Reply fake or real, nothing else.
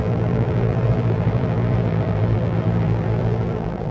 fake